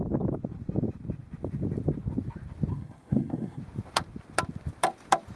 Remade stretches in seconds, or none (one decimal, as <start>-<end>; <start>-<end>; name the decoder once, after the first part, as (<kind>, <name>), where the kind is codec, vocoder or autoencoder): 2.7-3.6 (codec, SNAC)